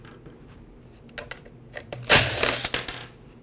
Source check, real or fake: real